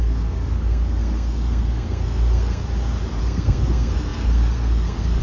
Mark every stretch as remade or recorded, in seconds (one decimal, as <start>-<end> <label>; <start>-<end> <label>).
0.0-2.6 remade; 2.6-3.2 recorded; 3.2-5.2 remade